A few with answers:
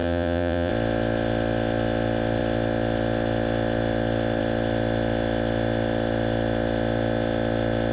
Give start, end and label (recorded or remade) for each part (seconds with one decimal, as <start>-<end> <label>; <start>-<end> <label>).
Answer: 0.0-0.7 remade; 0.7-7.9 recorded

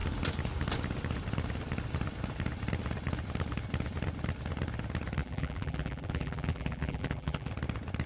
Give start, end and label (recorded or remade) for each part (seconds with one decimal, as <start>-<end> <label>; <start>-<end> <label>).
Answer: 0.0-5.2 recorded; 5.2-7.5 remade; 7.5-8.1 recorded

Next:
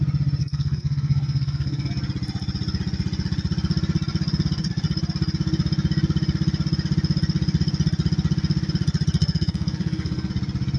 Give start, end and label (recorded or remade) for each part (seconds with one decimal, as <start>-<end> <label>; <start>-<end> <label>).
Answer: 0.0-0.4 recorded; 0.4-1.9 remade; 1.9-9.2 recorded; 9.2-10.3 remade; 10.3-10.8 recorded

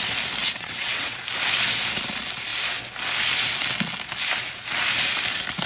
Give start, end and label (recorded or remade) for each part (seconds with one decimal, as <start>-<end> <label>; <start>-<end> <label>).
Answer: 0.0-0.4 recorded; 0.4-1.2 remade; 1.2-5.7 recorded

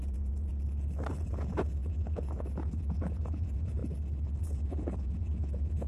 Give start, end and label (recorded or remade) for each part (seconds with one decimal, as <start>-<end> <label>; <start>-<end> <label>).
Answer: 0.0-0.5 remade; 0.5-1.1 recorded; 1.1-3.8 remade; 3.8-4.4 recorded; 4.4-5.9 remade

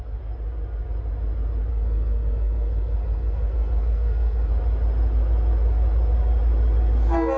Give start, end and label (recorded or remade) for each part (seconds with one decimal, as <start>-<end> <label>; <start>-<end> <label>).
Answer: 0.0-1.7 recorded; 1.7-4.5 remade; 4.5-7.4 recorded